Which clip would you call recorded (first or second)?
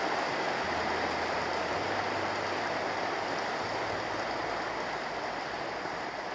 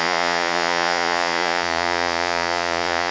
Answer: first